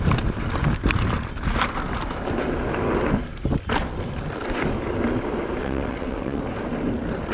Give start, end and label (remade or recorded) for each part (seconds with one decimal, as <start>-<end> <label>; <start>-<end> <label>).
0.0-5.6 recorded; 5.6-6.4 remade; 6.4-7.3 recorded